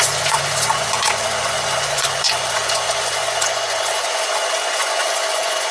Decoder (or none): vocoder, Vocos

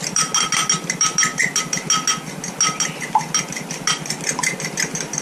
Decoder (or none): none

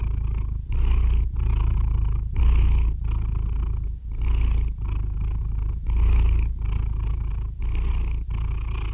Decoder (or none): none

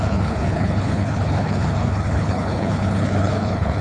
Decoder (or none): codec, HILCodec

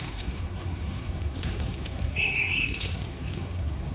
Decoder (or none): codec, SNAC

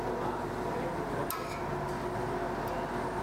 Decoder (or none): none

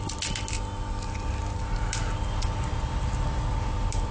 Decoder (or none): none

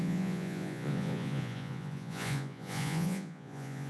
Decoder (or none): vocoder, Vocos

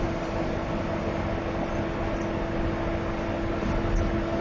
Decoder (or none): none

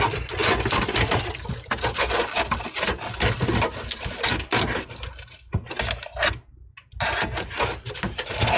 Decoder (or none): none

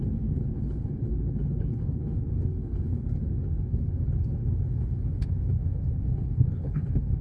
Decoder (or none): codec, HILCodec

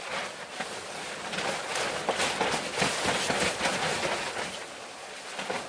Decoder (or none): none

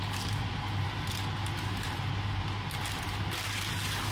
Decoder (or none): none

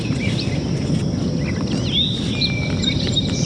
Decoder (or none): none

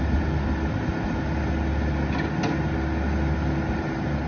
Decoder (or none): none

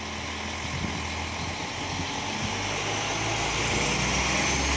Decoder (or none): none